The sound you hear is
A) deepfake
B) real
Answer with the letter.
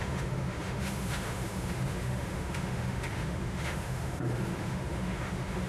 A